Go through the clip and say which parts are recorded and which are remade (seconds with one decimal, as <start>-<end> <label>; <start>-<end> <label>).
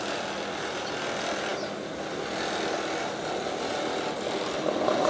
0.0-5.1 recorded